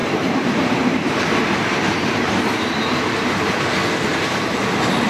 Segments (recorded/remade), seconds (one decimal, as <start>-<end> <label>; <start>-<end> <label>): 0.0-3.1 remade; 3.1-4.1 recorded; 4.1-4.6 remade; 4.6-5.1 recorded